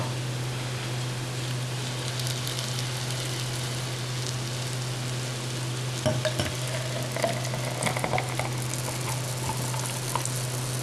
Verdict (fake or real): real